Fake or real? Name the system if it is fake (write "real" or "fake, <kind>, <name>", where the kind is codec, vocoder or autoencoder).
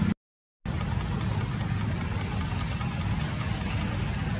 real